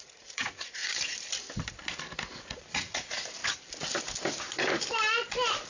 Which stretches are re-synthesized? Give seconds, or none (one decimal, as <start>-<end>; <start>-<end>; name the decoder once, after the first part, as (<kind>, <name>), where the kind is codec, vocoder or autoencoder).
0.0-0.8 (vocoder, Vocos); 2.4-3.4